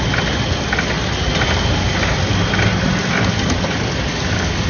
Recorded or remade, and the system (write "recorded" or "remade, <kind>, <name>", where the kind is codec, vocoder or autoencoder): recorded